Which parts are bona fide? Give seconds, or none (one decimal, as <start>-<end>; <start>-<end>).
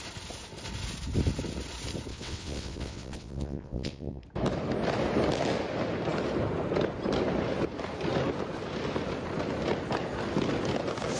0.0-2.1; 4.2-11.2